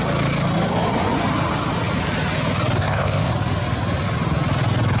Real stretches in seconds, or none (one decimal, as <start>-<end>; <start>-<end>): 0.0-2.8; 3.3-5.0